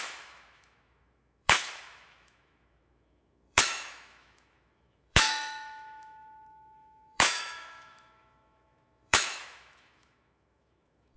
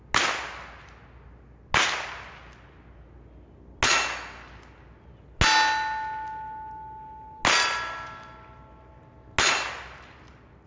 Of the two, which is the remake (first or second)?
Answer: first